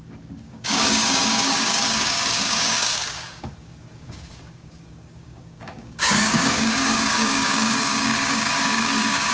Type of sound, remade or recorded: remade